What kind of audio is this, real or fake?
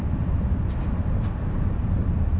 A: real